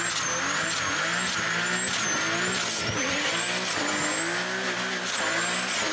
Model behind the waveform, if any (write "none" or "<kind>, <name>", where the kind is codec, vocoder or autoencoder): none